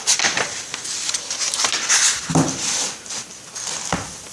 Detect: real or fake real